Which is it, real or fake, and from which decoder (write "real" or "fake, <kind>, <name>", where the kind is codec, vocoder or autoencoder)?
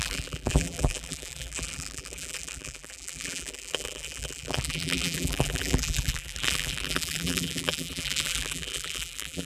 fake, vocoder, BigVGAN v2